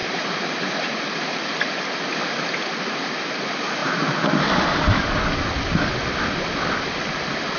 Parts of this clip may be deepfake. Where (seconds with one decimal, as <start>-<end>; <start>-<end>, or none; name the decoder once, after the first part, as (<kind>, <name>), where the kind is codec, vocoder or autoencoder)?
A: 0.0-1.0 (vocoder, BigVGAN v2); 3.8-5.0